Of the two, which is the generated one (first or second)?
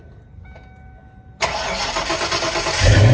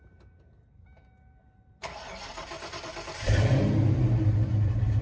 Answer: second